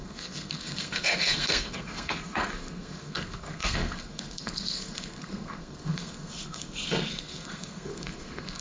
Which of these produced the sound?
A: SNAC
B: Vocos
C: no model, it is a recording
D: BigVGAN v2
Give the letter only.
A